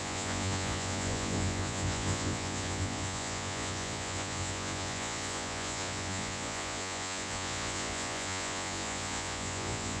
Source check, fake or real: fake